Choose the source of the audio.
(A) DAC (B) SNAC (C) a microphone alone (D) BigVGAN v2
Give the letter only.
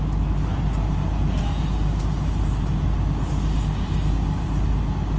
C